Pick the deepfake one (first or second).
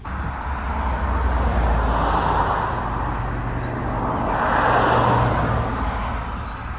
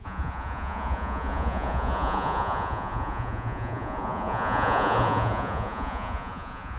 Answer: second